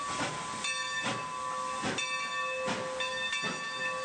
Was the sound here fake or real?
real